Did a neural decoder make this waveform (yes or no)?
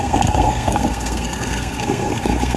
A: yes